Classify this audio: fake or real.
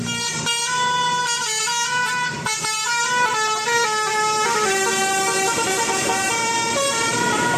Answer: fake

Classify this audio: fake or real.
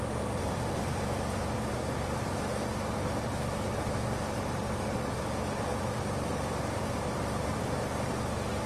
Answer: real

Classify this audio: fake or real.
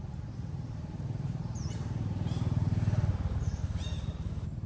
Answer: fake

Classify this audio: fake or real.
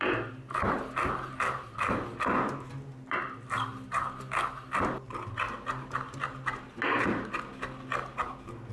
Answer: real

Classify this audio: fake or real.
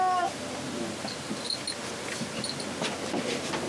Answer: real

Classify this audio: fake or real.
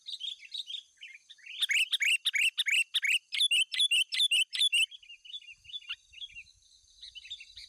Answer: real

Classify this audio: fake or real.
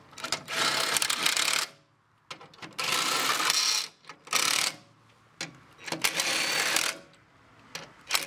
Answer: real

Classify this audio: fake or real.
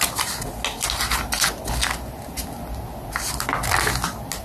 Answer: real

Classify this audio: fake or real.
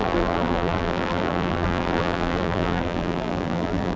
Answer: fake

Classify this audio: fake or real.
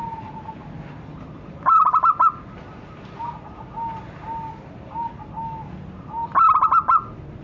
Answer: real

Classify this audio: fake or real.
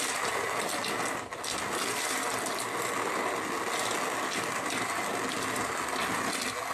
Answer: real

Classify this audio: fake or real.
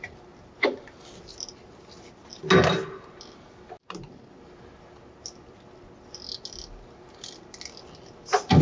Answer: real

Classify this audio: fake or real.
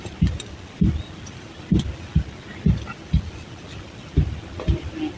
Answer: real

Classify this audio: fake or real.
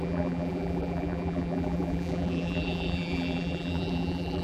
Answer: fake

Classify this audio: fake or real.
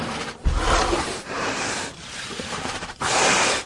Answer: fake